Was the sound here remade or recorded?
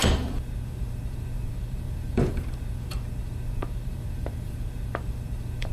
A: remade